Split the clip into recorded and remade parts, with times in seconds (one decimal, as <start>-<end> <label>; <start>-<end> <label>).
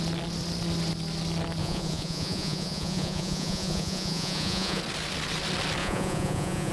0.0-1.6 recorded; 1.6-4.8 remade; 4.8-5.8 recorded; 5.8-6.7 remade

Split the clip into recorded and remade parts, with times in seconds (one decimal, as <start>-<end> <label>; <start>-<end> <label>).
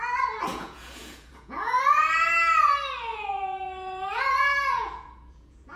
0.0-0.5 recorded; 0.5-1.8 remade; 1.8-3.1 recorded; 3.1-5.8 remade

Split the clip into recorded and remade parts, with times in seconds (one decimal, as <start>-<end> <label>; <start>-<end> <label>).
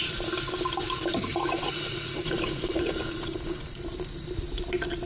0.0-1.3 recorded; 1.3-3.8 remade; 3.8-5.1 recorded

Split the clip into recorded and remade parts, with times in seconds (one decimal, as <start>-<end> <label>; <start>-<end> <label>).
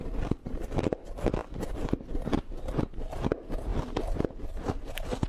0.0-5.3 recorded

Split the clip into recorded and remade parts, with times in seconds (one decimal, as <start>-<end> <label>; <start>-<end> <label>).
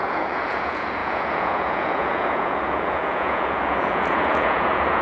0.0-5.0 remade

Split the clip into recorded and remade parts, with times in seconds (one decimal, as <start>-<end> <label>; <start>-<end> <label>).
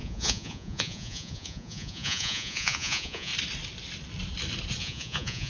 0.0-3.3 remade; 3.3-4.8 recorded; 4.8-5.5 remade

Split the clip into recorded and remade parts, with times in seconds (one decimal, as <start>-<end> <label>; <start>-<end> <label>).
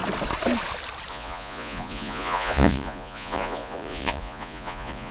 0.0-1.1 recorded; 1.1-5.1 remade